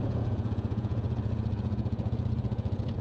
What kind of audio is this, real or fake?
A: fake